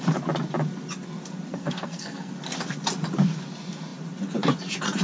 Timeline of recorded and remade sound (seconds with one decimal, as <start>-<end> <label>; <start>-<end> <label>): 0.0-1.5 recorded; 1.5-2.3 remade; 2.3-5.0 recorded